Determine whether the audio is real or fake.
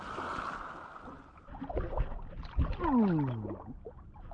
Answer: real